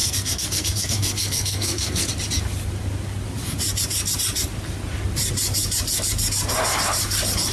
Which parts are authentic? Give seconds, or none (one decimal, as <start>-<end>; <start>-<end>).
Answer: 2.1-7.5